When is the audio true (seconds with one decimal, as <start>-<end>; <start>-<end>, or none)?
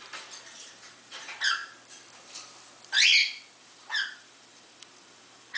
1.6-3.6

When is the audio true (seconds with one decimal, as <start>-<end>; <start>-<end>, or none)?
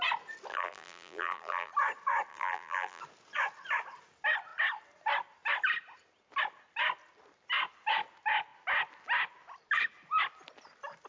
0.0-0.5; 1.7-2.3; 3.0-11.1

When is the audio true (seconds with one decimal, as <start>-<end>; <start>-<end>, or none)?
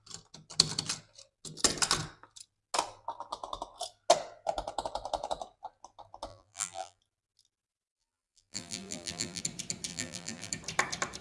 0.0-6.3; 7.0-7.9; 9.4-9.9; 10.5-11.2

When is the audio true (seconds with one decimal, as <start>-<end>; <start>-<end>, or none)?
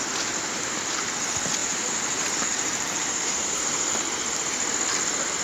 0.0-1.6; 3.9-5.4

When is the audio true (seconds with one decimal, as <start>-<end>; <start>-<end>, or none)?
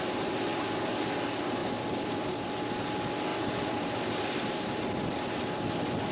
0.0-1.6; 2.5-3.3